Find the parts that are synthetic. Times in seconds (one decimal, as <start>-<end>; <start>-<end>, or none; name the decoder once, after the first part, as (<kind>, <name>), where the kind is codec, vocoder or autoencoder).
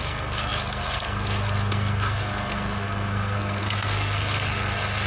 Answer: 0.0-5.1 (codec, SNAC)